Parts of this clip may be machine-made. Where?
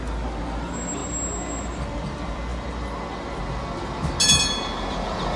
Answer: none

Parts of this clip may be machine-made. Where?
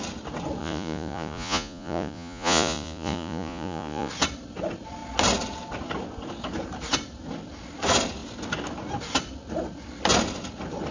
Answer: 0.6-4.1 (vocoder, Vocos)